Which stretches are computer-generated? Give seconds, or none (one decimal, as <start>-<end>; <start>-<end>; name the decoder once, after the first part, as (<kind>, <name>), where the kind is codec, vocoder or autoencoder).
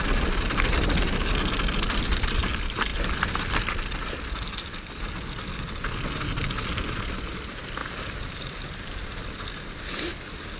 none